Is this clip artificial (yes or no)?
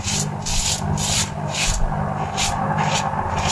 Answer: yes